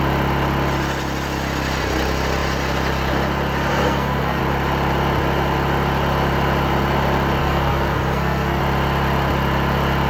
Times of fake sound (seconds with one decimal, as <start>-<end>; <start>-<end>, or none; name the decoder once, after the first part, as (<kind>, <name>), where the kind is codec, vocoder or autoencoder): 3.7-4.4 (codec, SNAC); 7.4-8.6